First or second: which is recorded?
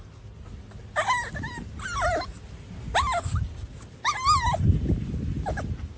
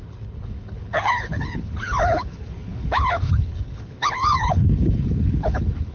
first